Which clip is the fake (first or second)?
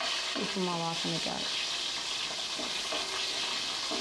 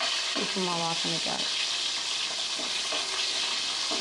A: second